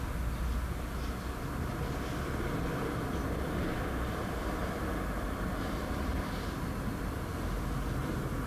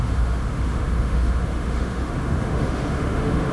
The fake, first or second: second